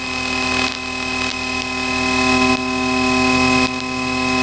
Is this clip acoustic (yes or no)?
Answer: yes